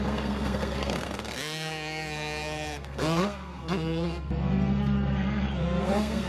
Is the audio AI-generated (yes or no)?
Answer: yes